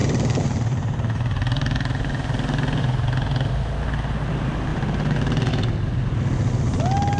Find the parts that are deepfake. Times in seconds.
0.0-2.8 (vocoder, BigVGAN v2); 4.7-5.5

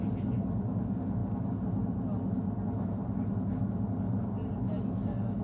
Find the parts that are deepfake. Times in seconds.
none

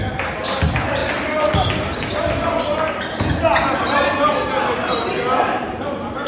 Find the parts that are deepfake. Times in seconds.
none

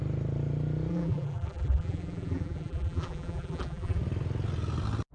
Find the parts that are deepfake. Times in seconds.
0.9-4.0 (vocoder, BigVGAN v2)

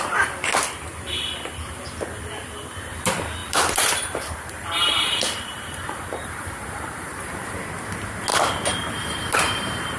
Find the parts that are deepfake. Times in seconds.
3.4-7.6 (vocoder, BigVGAN v2); 8.3-10.0

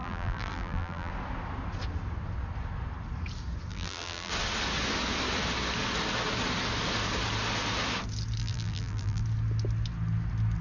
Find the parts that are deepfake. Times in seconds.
0.0-1.1 (vocoder, BigVGAN v2); 3.7-4.3; 8.4-9.2